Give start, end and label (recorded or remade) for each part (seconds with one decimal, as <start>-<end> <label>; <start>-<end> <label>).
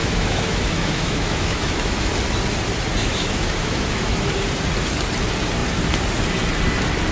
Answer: 0.0-2.1 remade; 2.1-3.0 recorded; 3.0-4.3 remade; 4.3-7.1 recorded